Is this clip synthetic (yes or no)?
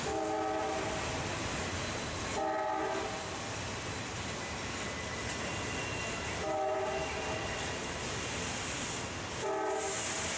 no